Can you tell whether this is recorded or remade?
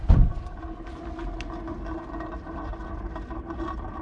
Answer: recorded